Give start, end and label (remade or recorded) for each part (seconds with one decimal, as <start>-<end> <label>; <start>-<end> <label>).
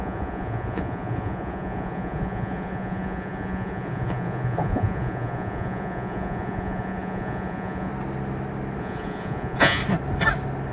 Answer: 0.0-7.9 remade; 7.9-8.8 recorded; 8.8-9.8 remade; 9.8-10.7 recorded